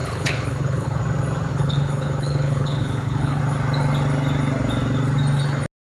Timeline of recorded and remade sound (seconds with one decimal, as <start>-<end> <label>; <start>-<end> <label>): 0.0-1.0 remade; 1.0-1.5 recorded; 1.5-3.4 remade; 3.4-5.9 recorded